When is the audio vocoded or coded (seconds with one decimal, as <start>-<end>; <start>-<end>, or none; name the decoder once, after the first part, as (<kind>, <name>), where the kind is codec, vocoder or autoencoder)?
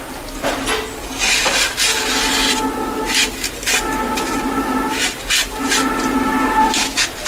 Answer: 3.2-6.7 (vocoder, BigVGAN v2)